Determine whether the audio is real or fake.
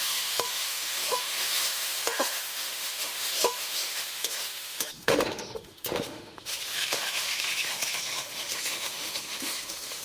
fake